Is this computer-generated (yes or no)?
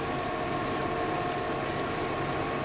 no